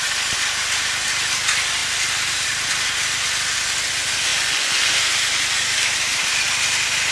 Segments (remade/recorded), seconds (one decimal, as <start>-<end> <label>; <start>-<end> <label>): 0.0-4.3 recorded; 4.3-4.9 remade; 4.9-7.1 recorded